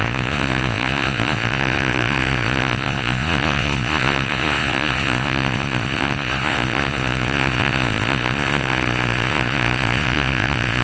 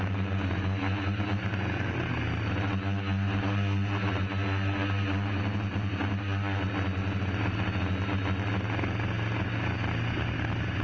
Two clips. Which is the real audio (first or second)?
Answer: second